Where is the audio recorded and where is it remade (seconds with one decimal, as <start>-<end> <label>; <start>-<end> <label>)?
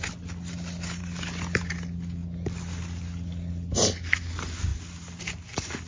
0.0-5.9 recorded